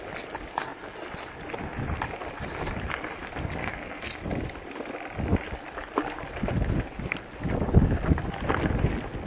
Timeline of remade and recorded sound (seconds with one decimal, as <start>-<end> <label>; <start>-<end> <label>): 0.0-3.6 recorded; 3.6-4.1 remade; 4.1-9.3 recorded